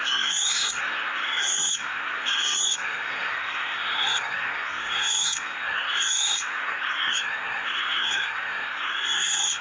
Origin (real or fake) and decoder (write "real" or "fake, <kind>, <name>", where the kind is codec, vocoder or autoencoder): fake, codec, SNAC